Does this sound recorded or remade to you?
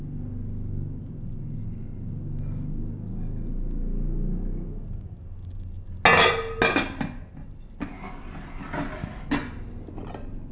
recorded